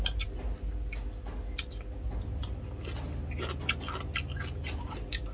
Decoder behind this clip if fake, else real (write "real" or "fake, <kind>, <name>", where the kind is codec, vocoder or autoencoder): real